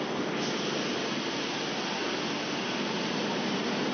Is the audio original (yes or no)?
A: yes